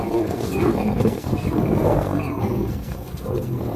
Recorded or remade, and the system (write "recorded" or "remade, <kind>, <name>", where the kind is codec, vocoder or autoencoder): remade, codec, SNAC